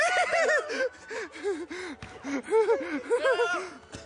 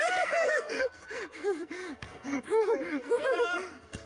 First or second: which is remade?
second